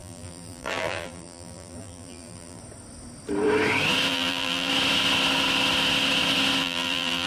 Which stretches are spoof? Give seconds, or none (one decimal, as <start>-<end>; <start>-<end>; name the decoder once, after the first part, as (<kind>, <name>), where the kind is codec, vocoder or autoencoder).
0.0-2.6 (vocoder, BigVGAN v2); 4.1-4.7; 6.6-7.3